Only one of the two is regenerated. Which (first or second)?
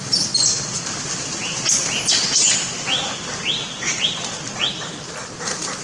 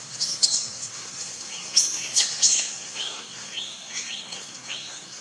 second